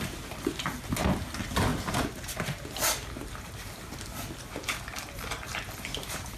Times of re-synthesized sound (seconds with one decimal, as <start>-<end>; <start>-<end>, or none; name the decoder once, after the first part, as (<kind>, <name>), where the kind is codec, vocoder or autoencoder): none